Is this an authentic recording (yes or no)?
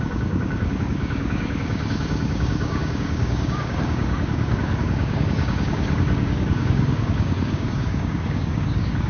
no